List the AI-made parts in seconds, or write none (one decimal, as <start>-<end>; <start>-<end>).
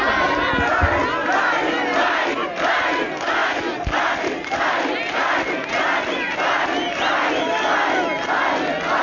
none